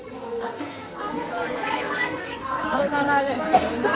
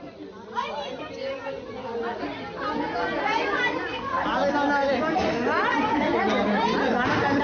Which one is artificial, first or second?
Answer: first